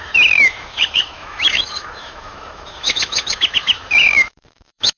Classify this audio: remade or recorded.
remade